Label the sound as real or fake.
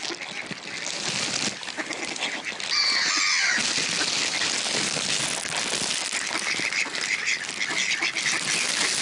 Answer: real